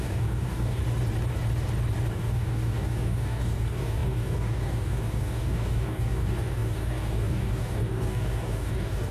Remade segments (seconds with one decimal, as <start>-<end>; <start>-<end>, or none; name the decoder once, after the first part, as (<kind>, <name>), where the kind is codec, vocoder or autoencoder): 0.0-0.8 (codec, DAC); 2.1-9.1